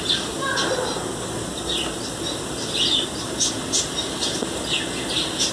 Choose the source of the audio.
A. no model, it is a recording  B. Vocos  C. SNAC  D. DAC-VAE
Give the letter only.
A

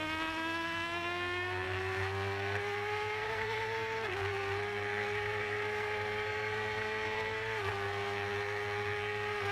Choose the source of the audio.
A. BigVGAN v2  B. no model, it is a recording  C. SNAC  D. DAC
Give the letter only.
C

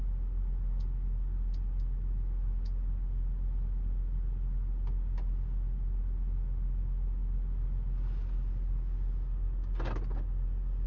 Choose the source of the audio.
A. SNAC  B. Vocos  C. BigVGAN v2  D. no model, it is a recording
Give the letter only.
D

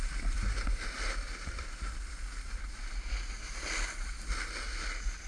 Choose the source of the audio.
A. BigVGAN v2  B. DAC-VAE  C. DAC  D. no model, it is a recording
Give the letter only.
D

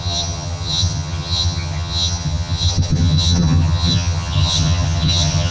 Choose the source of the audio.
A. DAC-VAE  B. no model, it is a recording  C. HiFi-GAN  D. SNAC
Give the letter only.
C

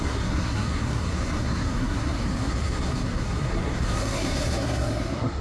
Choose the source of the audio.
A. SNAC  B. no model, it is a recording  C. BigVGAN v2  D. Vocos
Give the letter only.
A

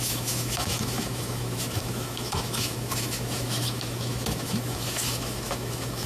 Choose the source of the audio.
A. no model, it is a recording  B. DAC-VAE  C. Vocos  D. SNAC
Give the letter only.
B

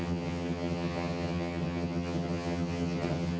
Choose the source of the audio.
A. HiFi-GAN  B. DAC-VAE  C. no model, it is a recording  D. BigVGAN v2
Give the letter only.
A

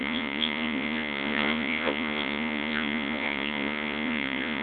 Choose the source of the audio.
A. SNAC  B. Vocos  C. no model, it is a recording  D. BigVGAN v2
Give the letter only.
B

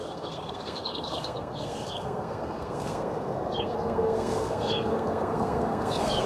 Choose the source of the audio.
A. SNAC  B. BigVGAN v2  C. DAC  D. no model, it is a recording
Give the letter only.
A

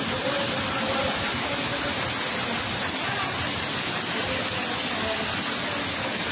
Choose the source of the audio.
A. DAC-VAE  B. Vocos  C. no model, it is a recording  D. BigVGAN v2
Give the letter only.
C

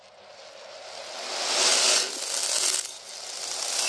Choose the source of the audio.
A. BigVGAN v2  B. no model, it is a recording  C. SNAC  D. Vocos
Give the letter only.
B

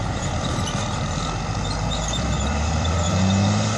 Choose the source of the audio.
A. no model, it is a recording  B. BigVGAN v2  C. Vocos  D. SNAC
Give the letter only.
B